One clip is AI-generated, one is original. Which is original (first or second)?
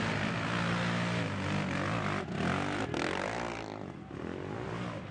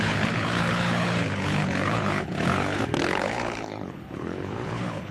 first